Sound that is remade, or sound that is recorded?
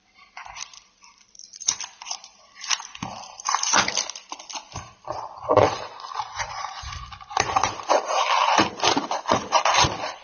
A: remade